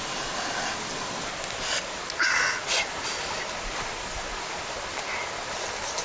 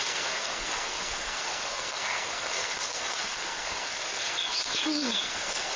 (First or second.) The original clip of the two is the first